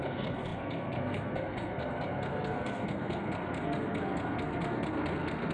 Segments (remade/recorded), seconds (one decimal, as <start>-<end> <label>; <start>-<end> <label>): 0.0-5.5 remade